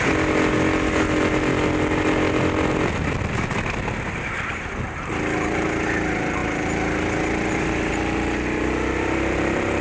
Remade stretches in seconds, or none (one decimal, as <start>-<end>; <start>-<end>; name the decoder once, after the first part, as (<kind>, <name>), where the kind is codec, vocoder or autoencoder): none